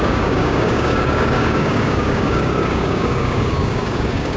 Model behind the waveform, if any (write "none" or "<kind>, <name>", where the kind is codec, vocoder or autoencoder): codec, DAC